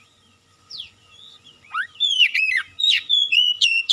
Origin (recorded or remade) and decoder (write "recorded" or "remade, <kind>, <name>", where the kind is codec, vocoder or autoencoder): remade, vocoder, Vocos